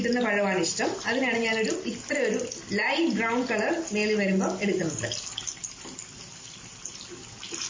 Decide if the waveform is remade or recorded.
recorded